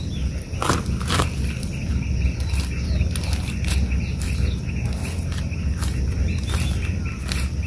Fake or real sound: real